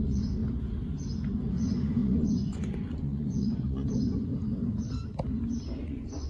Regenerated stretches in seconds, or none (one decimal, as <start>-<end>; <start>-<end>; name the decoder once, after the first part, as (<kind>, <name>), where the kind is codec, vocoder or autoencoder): 0.0-0.4 (vocoder, Vocos); 1.5-4.3; 5.8-6.3

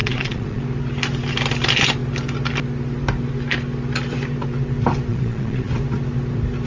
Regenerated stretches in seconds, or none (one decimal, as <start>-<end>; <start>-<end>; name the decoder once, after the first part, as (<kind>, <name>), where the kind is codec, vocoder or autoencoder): 0.0-0.6 (vocoder, Vocos); 5.1-5.7

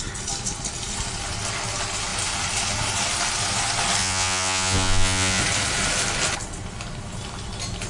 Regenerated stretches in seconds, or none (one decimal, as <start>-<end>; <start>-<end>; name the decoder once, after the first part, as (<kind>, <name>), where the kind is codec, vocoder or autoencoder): 4.0-5.4 (vocoder, Vocos)

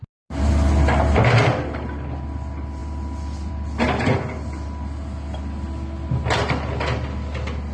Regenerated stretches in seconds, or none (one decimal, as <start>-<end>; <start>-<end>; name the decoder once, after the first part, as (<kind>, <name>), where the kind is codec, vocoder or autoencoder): none

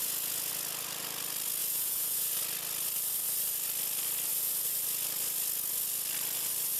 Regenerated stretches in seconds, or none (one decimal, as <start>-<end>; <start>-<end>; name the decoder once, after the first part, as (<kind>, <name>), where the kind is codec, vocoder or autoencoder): 0.0-0.5 (vocoder, Vocos); 1.6-2.4

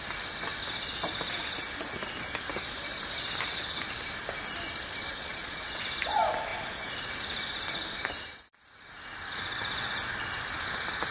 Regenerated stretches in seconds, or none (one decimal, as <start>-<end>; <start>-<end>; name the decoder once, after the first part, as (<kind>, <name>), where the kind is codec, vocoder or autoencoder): 5.1-5.8 (vocoder, Vocos)

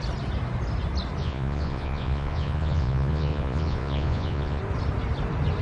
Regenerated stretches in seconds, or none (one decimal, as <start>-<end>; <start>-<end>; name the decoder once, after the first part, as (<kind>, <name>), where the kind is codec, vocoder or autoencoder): 1.2-4.6 (vocoder, Vocos)